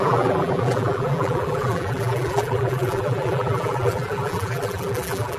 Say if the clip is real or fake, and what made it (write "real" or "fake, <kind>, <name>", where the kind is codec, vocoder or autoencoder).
fake, vocoder, BigVGAN v2